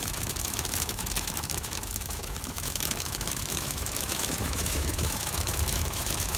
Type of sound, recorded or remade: remade